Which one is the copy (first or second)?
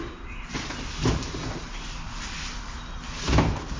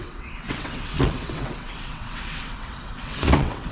second